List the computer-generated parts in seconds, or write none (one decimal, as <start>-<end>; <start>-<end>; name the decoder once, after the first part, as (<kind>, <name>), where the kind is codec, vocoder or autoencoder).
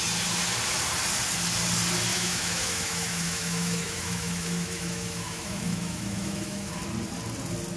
2.1-6.8 (autoencoder, DAC-VAE)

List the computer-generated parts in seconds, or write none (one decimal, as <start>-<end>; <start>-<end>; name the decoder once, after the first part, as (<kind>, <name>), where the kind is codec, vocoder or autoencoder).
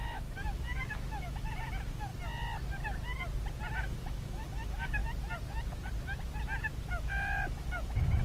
0.0-2.1 (autoencoder, DAC-VAE); 3.7-5.0; 6.9-8.2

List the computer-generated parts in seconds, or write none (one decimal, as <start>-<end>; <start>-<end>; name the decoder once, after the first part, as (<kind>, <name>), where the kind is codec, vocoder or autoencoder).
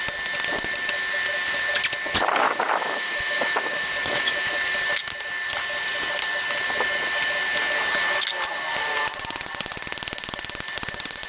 2.4-4.5 (autoencoder, DAC-VAE)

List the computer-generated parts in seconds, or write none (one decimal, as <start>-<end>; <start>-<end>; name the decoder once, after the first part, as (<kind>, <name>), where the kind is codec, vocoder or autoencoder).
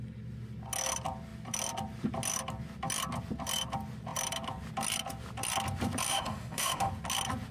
6.1-6.9 (autoencoder, DAC-VAE)